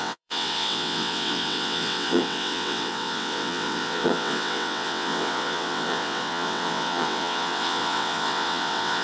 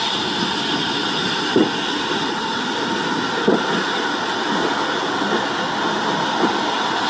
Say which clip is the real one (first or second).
second